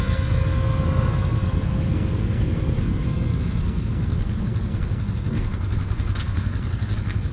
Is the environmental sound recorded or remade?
remade